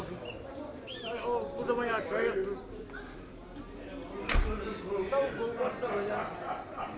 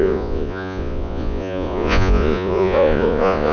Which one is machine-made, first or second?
second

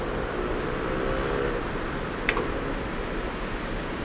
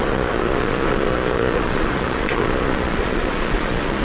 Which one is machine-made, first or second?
second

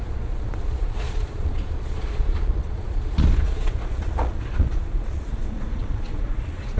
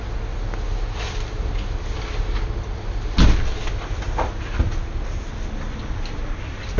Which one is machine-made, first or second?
first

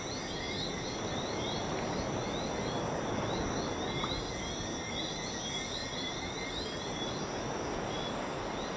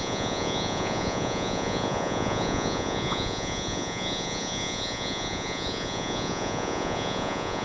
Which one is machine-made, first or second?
second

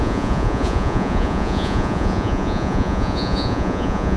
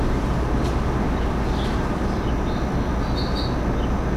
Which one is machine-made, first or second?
first